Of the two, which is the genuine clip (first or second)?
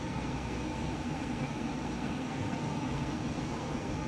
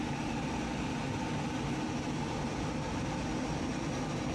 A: second